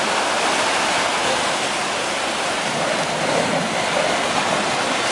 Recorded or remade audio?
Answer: recorded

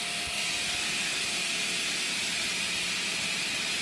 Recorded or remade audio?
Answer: recorded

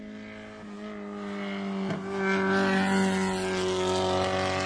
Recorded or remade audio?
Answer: recorded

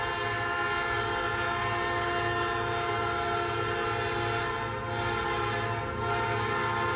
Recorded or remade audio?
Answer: recorded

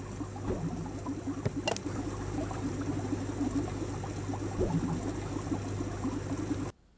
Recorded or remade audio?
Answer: recorded